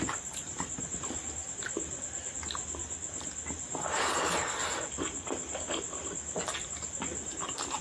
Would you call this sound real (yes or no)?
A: yes